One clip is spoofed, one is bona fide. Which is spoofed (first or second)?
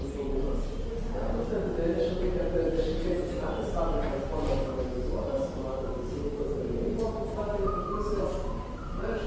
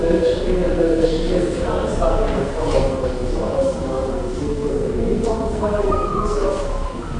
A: second